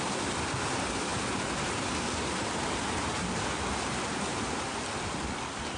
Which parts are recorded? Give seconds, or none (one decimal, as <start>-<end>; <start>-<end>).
0.0-5.8